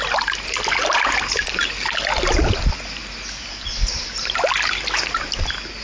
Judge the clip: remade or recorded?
recorded